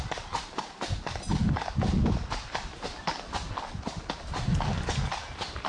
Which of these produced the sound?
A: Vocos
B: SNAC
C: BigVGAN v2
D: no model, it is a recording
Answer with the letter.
D